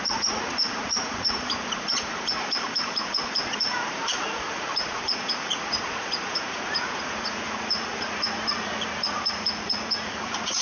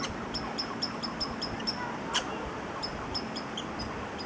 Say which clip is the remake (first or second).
first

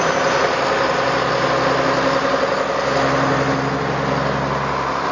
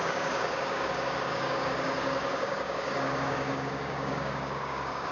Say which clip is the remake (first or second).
second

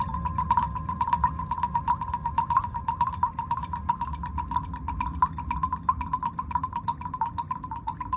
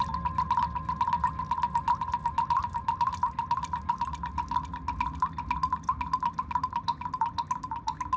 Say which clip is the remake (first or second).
first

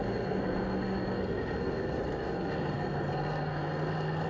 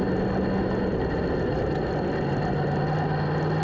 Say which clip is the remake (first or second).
first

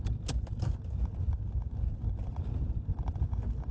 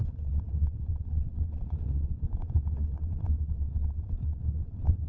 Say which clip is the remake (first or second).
second